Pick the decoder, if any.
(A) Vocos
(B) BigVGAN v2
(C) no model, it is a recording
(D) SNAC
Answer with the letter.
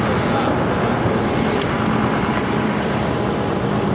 C